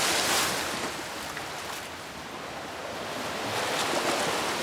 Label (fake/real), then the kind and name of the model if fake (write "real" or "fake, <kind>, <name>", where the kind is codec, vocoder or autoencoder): real